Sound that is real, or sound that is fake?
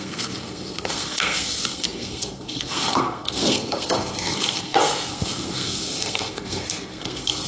fake